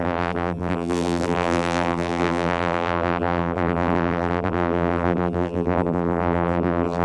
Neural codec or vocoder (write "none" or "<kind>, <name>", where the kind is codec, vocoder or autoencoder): vocoder, BigVGAN v2